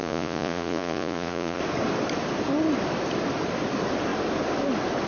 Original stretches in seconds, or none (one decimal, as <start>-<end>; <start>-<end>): 1.6-5.1